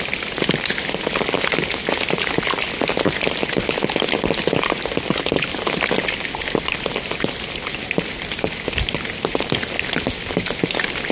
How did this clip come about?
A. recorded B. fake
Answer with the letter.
A